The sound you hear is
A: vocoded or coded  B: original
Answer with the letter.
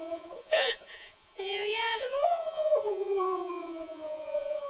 A